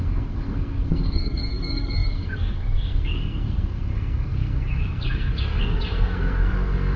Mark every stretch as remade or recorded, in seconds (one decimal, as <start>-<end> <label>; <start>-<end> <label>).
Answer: 0.0-7.0 remade